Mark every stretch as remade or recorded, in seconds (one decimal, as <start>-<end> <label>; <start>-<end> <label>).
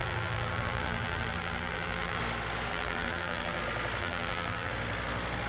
0.0-2.2 remade; 2.2-2.7 recorded; 2.7-3.6 remade; 3.6-4.0 recorded; 4.0-4.7 remade; 4.7-5.5 recorded